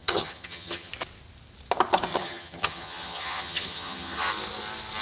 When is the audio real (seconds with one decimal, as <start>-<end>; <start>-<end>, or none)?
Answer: 0.9-2.1; 4.3-5.0